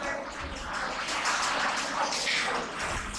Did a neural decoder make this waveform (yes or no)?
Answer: no